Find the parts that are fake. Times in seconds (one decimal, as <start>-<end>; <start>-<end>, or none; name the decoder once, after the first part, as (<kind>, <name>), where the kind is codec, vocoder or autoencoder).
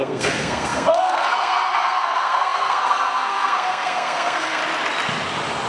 0.0-4.6 (codec, SNAC)